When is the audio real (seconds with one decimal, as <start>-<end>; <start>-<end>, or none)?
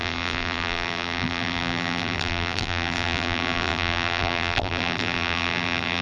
none